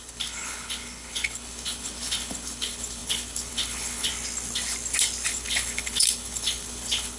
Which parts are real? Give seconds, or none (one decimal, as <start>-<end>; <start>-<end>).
4.1-5.3